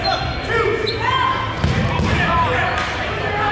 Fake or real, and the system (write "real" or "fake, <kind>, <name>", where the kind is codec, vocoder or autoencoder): real